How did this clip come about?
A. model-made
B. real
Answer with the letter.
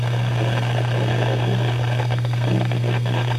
A